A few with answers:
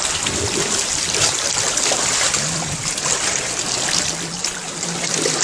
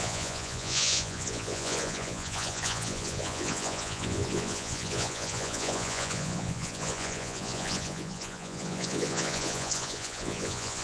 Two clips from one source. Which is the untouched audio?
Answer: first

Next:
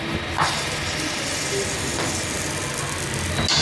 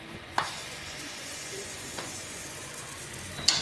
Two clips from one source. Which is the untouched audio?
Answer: first